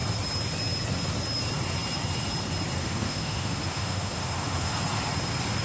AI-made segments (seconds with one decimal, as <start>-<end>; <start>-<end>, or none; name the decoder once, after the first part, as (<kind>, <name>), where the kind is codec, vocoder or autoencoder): 2.8-4.7 (autoencoder, DAC-VAE)